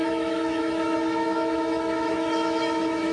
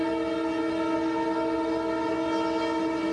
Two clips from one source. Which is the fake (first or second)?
first